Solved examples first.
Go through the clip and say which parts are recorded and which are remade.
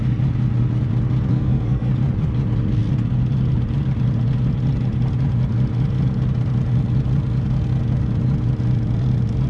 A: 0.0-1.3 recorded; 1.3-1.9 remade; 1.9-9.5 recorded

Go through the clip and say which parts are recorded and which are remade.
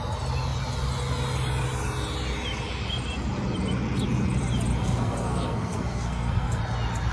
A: 0.0-4.8 recorded; 4.8-6.6 remade; 6.6-7.1 recorded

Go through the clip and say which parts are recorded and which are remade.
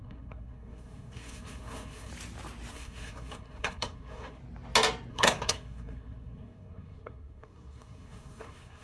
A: 0.0-2.1 remade; 2.1-2.7 recorded; 2.7-4.4 remade; 4.4-5.1 recorded; 5.1-8.8 remade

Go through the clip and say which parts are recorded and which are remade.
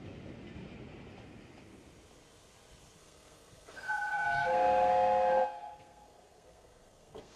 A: 0.0-3.0 recorded; 3.0-7.4 remade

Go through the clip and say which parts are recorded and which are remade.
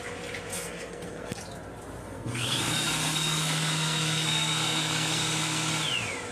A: 0.0-0.5 recorded; 0.5-1.4 remade; 1.4-2.0 recorded; 2.0-5.7 remade; 5.7-6.3 recorded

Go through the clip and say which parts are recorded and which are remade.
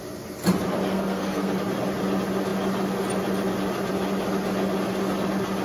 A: 0.0-0.9 recorded; 0.9-1.5 remade; 1.5-5.6 recorded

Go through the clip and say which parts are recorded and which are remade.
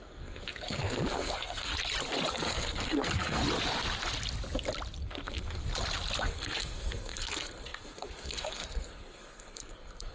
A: 0.0-1.7 remade; 1.7-2.3 recorded; 2.3-3.4 remade; 3.4-5.0 recorded; 5.0-5.6 remade; 5.6-6.2 recorded; 6.2-10.1 remade